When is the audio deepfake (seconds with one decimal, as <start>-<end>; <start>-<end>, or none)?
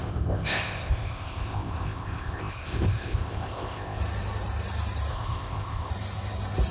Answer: 0.0-4.0; 5.1-5.9